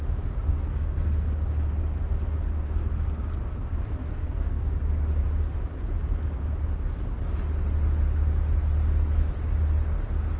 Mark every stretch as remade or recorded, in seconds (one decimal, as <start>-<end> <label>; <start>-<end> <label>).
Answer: 0.0-0.5 recorded; 0.5-1.3 remade; 1.3-4.0 recorded; 4.0-4.8 remade; 4.8-10.4 recorded